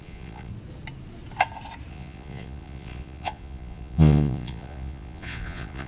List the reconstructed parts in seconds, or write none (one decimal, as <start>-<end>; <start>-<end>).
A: 0.0-0.5; 1.9-5.9